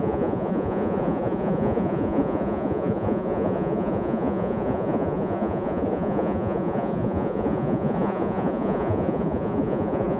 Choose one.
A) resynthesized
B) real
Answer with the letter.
A